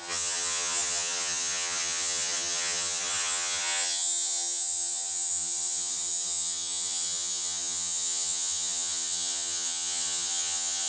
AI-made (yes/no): yes